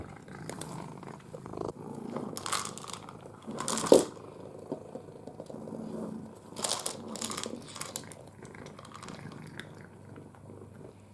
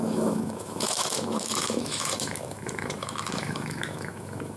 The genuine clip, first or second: first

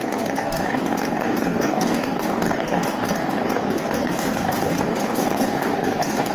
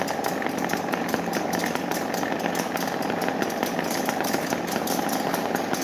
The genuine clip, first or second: second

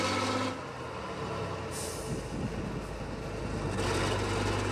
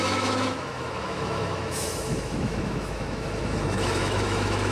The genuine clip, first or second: first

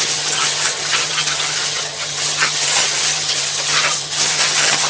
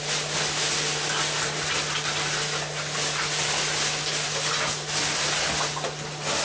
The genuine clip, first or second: second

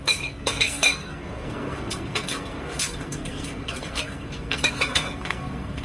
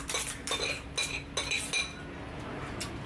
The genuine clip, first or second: second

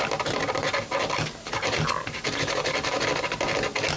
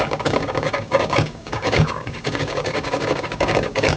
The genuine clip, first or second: first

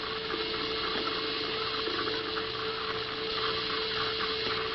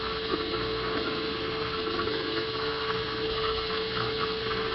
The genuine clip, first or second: first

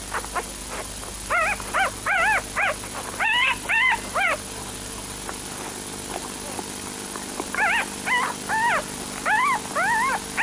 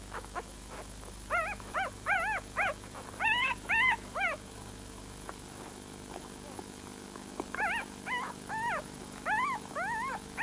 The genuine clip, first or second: first